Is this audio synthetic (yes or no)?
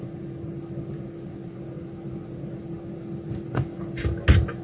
no